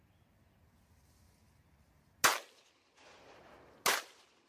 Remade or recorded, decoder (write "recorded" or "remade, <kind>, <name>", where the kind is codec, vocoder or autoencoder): recorded